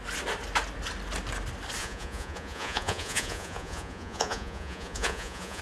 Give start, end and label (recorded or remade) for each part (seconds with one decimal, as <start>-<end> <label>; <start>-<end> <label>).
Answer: 0.0-1.8 recorded; 1.8-5.6 remade